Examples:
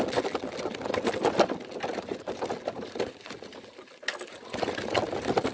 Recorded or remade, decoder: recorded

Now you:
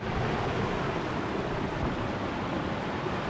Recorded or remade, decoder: recorded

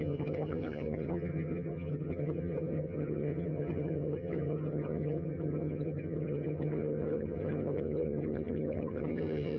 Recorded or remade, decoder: remade, vocoder, HiFi-GAN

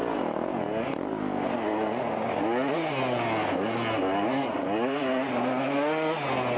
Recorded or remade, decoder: recorded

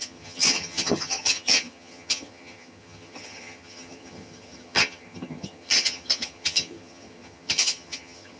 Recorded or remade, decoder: remade, vocoder, HiFi-GAN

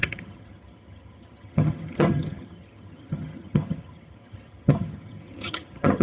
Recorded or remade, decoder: remade, vocoder, HiFi-GAN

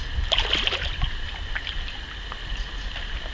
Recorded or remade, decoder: recorded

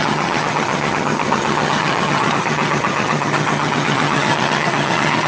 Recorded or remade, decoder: remade, vocoder, HiFi-GAN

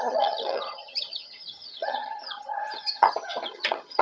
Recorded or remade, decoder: remade, vocoder, HiFi-GAN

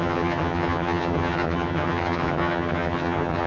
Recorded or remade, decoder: remade, vocoder, HiFi-GAN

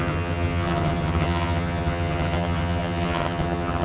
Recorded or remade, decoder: remade, vocoder, HiFi-GAN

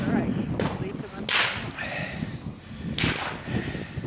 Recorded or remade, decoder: recorded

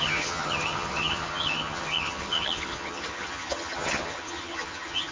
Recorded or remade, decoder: remade, vocoder, HiFi-GAN